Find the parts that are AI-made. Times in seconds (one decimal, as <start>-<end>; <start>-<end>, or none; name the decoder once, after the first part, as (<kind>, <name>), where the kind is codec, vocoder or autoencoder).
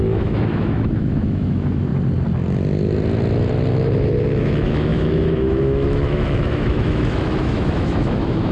0.0-1.9 (autoencoder, DAC-VAE); 4.4-8.5